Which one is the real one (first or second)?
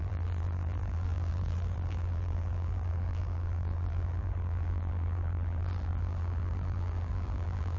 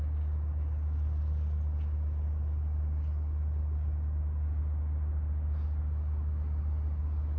second